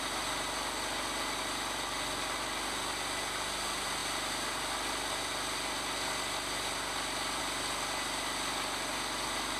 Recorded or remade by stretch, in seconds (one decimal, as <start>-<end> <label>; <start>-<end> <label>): 0.0-9.6 recorded